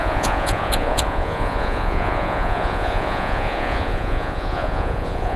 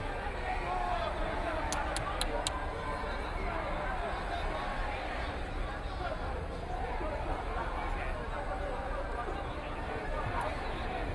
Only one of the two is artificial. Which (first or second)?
first